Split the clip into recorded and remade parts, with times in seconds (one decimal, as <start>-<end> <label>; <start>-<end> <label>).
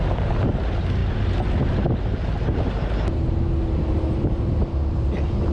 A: 0.0-5.5 recorded